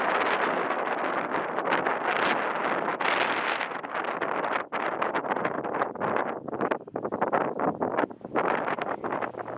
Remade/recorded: recorded